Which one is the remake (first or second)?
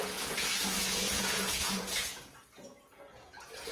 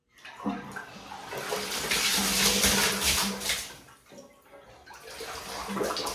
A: first